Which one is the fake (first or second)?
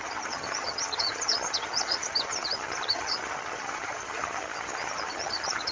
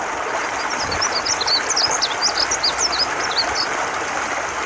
first